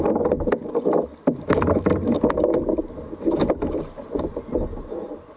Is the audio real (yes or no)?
yes